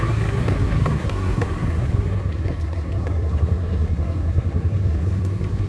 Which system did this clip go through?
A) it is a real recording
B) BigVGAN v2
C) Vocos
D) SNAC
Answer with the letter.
D